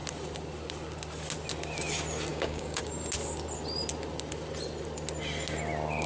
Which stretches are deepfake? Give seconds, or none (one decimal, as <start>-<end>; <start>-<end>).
2.3-2.8